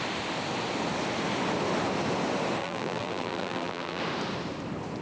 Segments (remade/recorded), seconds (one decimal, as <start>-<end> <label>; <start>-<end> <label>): 0.0-2.6 recorded; 2.6-4.0 remade; 4.0-5.0 recorded